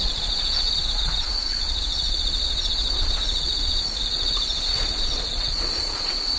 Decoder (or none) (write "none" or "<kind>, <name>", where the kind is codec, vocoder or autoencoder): vocoder, Vocos